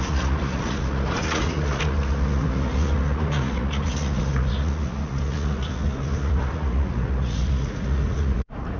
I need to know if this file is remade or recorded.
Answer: remade